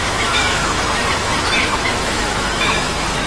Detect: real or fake fake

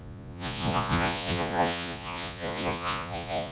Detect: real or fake fake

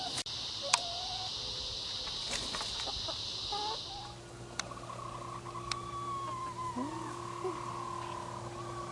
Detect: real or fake real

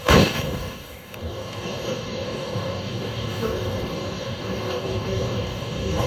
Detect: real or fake fake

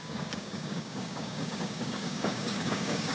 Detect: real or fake fake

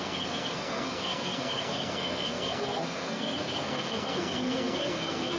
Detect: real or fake fake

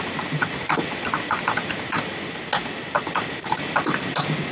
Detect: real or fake real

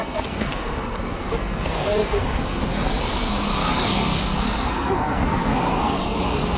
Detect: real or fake fake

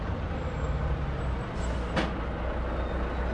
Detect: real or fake real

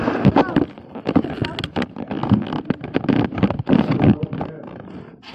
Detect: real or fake real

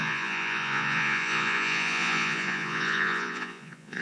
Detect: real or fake fake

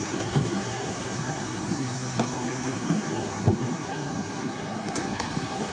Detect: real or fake fake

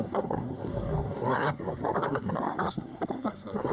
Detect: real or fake fake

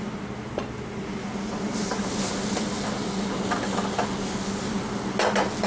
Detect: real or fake real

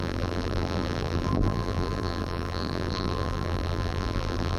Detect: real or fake fake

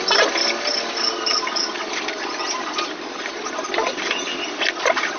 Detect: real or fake real